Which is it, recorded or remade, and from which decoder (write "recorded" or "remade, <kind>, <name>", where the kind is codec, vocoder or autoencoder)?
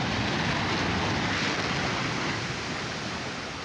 recorded